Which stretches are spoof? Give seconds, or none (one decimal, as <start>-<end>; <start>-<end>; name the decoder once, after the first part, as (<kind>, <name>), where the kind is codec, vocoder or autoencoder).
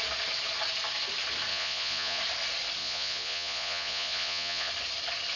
1.5-2.2 (vocoder, Vocos); 2.8-4.7